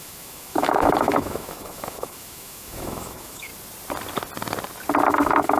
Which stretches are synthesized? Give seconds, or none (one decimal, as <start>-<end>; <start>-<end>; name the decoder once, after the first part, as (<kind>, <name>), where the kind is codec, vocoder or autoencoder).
0.0-3.5 (autoencoder, DAC-VAE); 5.1-5.6